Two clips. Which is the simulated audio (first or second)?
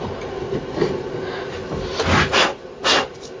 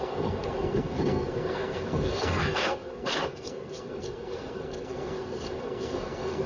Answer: second